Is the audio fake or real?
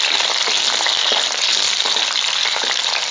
real